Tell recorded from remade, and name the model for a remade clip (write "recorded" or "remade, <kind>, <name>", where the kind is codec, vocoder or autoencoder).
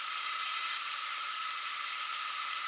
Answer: remade, vocoder, BigVGAN v2